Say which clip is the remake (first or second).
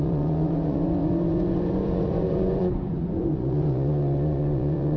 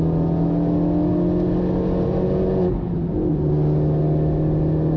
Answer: first